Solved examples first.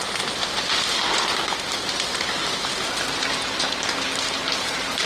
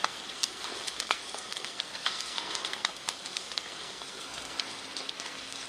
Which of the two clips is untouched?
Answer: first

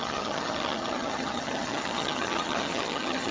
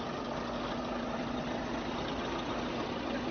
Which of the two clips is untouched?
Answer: second